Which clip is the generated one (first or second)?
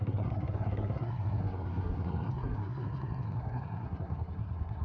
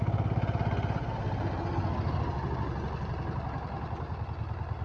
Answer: first